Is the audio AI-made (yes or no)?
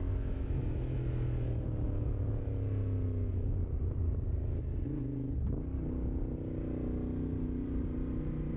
no